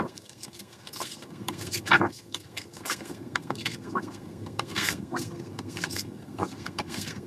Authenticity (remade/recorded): remade